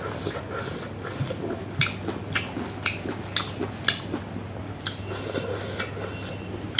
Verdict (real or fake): real